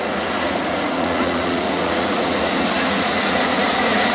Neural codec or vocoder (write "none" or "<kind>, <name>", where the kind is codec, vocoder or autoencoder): vocoder, Vocos